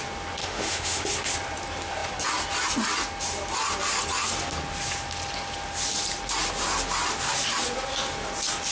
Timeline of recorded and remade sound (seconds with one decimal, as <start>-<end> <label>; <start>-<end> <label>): 0.0-0.4 recorded; 0.4-1.1 remade; 1.1-8.7 recorded